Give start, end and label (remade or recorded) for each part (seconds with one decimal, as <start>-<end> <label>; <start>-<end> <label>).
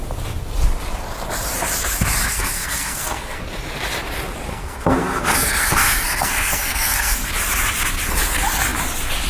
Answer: 0.0-2.3 recorded; 2.3-3.4 remade; 3.4-4.5 recorded; 4.5-7.3 remade; 7.3-9.3 recorded